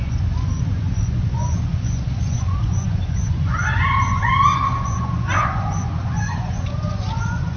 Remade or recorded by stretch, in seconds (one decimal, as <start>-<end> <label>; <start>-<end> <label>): 0.0-7.6 remade